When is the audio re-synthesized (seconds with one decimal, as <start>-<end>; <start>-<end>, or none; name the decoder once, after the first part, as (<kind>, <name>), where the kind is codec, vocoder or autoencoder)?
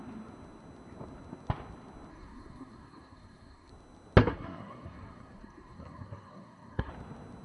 2.1-3.7 (codec, SNAC); 4.2-6.9